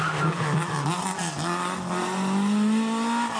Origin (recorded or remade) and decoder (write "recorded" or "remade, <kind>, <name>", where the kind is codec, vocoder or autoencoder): recorded